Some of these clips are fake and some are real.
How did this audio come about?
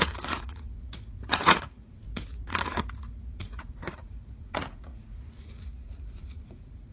fake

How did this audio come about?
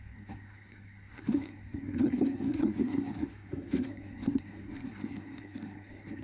fake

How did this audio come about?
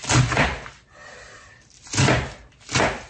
real